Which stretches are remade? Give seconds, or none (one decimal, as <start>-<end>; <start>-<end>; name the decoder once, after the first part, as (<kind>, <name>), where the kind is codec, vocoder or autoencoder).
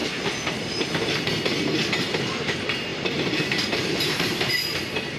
0.0-1.4 (vocoder, BigVGAN v2); 2.9-5.2